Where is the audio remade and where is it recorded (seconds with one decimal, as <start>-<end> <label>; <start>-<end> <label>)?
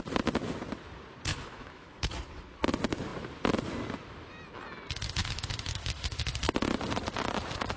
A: 0.0-1.3 recorded; 1.3-2.1 remade; 2.1-5.2 recorded; 5.2-6.2 remade; 6.2-7.8 recorded